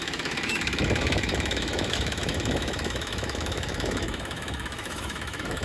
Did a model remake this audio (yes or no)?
yes